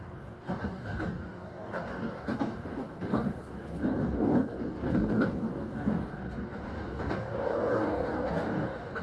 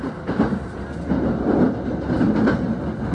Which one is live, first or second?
second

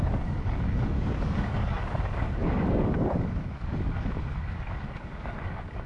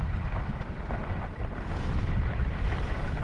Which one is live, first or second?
second